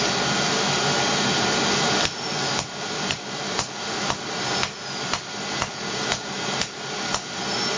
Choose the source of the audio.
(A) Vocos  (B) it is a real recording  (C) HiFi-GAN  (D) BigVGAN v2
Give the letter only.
B